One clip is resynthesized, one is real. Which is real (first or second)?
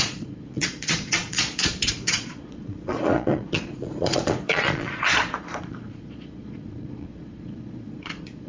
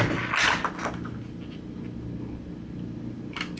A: second